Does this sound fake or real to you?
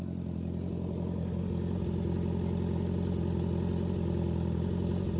real